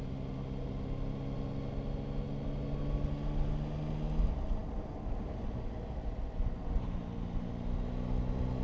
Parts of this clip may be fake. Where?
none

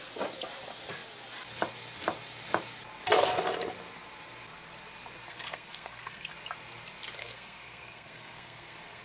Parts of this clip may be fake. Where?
5.3-6.3 (codec, SNAC); 7.2-9.0

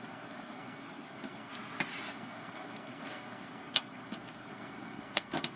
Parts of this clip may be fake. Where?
0.0-1.5 (codec, SNAC); 2.1-5.6

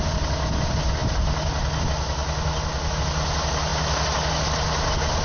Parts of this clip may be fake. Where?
none

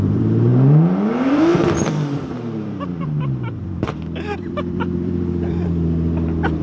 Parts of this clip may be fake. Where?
0.0-0.5 (vocoder, BigVGAN v2); 1.1-6.6

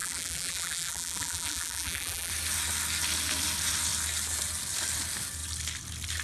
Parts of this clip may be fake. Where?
0.0-2.3 (vocoder, BigVGAN v2)

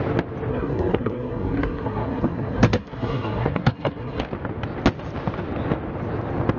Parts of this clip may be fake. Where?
0.5-4.2 (codec, SNAC)

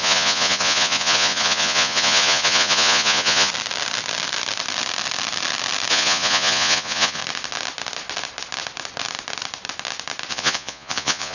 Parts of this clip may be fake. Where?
0.0-3.5 (vocoder, Vocos); 5.9-7.2; 10.3-11.3